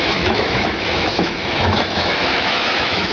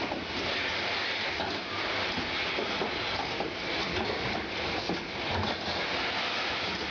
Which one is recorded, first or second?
second